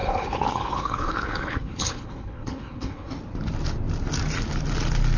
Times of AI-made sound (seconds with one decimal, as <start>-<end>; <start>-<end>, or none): 0.0-3.1